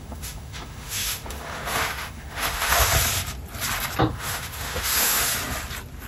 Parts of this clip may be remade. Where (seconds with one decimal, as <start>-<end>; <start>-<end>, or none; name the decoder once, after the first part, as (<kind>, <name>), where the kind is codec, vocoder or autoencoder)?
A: 0.0-2.9 (autoencoder, DAC-VAE); 4.1-5.3